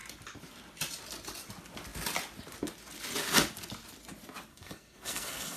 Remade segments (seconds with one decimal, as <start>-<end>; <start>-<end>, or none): 4.5-5.6